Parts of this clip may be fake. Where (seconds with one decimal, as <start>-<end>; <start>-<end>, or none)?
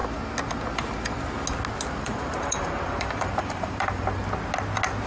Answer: 2.0-4.2